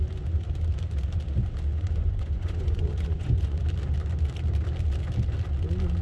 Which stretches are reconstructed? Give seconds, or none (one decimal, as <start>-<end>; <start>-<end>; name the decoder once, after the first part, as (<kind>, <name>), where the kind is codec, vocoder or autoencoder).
1.7-3.6 (vocoder, Vocos)